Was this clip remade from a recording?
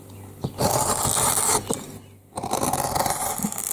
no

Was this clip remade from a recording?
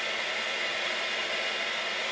no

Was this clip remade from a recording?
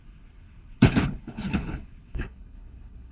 yes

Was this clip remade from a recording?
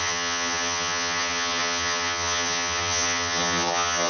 yes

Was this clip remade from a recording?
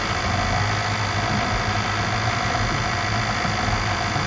no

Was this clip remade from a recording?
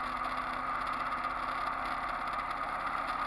no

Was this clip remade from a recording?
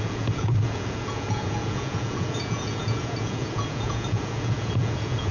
yes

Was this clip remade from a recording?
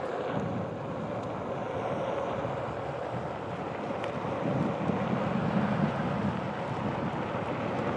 no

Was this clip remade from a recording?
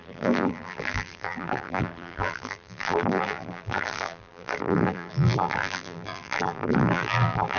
yes